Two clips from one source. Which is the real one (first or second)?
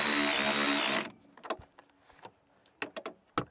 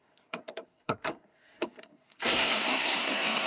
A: first